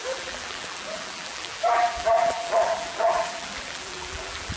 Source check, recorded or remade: remade